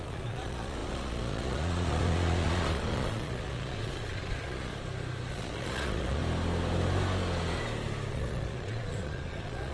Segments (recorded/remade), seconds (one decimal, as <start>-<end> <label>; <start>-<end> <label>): 0.0-4.7 remade; 4.7-5.3 recorded; 5.3-6.2 remade; 6.2-8.1 recorded; 8.1-9.7 remade